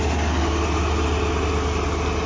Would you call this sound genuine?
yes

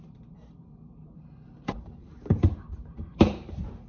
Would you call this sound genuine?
no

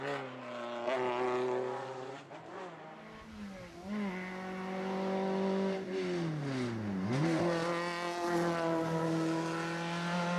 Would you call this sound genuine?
yes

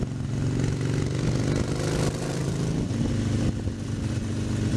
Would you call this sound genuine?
yes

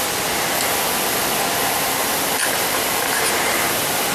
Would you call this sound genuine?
yes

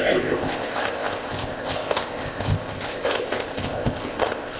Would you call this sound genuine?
no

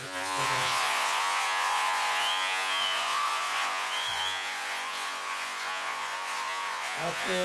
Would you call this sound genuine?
no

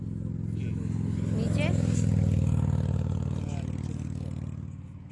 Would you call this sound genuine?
yes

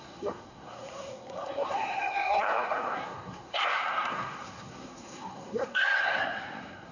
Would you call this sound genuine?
no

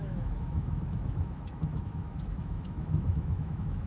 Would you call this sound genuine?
no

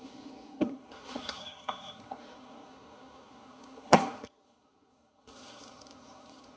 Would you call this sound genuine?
no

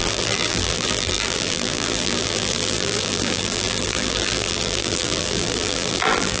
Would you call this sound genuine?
no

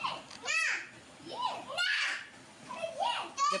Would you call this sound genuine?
yes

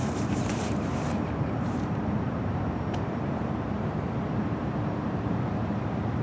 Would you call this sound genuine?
no